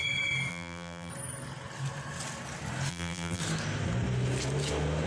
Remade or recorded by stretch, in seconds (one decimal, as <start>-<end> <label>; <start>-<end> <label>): 0.0-0.5 recorded; 0.5-1.1 remade; 1.1-2.9 recorded; 2.9-3.4 remade; 3.4-5.1 recorded